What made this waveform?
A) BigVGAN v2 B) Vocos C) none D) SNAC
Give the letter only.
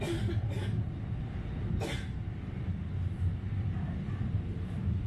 C